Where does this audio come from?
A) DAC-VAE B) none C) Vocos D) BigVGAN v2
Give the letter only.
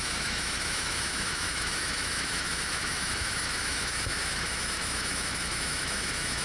A